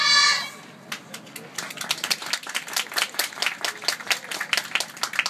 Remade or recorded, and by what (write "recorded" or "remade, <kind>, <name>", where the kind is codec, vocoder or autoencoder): recorded